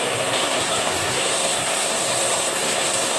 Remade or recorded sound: remade